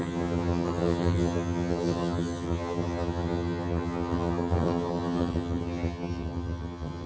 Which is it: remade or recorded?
remade